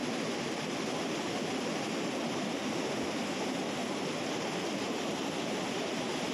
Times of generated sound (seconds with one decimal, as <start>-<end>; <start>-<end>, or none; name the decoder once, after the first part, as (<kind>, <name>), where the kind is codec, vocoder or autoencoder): none